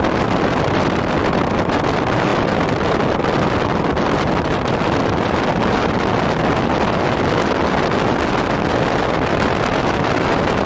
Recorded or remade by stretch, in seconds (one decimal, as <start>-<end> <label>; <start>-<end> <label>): 0.0-10.7 recorded